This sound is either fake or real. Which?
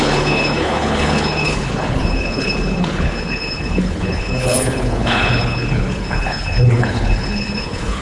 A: fake